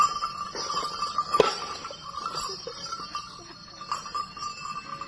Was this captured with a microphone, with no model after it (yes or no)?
yes